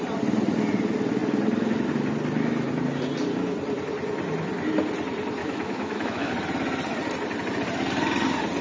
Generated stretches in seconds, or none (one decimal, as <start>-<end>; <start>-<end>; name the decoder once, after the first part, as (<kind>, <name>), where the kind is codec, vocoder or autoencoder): 5.4-6.3 (autoencoder, DAC-VAE)